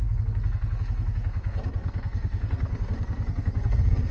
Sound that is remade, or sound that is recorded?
remade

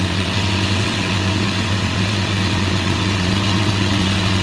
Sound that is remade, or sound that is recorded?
remade